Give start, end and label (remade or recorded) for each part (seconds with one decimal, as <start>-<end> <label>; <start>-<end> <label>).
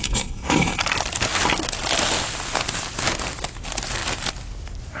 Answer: 0.0-0.8 remade; 0.8-5.0 recorded